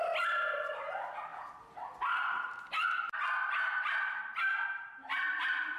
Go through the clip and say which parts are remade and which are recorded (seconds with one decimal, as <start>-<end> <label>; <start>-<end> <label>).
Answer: 0.0-5.8 recorded